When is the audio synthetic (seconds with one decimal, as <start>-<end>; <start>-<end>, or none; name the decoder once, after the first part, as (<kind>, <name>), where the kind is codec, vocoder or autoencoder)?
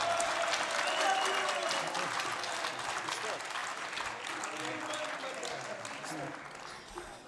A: 3.6-4.3 (vocoder, BigVGAN v2)